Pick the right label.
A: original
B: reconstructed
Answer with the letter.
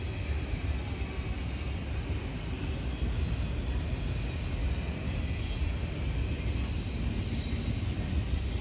A